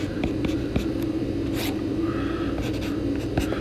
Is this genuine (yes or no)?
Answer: yes